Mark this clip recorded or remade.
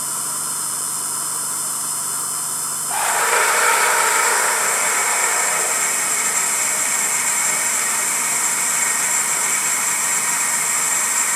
remade